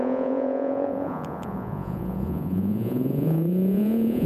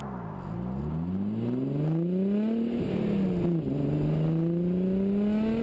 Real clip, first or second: second